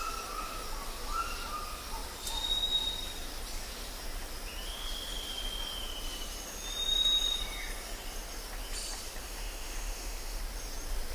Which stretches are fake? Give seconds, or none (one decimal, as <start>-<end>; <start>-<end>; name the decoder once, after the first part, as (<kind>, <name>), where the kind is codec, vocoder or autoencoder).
9.2-10.4 (autoencoder, DAC-VAE)